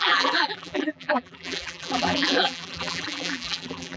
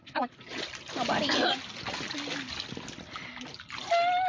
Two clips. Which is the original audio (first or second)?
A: second